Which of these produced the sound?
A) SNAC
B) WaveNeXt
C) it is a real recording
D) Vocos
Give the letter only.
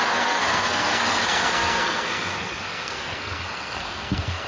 A